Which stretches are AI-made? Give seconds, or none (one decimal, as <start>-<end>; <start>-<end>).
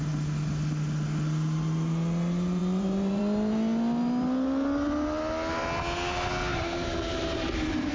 2.6-3.2; 6.5-7.9